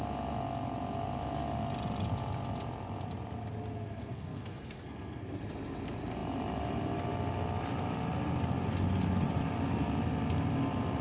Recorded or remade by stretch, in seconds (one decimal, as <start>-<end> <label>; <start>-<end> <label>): 0.0-4.0 recorded; 4.0-5.4 remade; 5.4-11.0 recorded